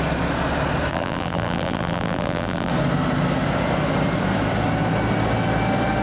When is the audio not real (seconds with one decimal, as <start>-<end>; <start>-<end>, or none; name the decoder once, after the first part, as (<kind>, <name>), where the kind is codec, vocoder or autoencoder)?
0.9-2.7 (vocoder, BigVGAN v2)